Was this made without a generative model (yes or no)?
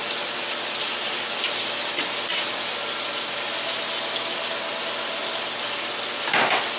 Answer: yes